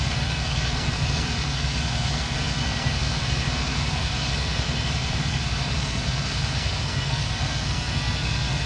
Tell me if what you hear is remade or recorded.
remade